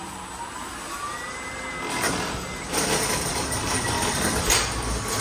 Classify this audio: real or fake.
real